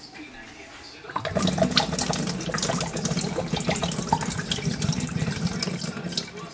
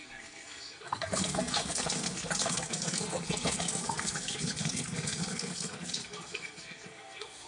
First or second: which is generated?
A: second